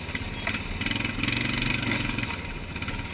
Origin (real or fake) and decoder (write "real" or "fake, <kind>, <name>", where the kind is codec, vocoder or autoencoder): real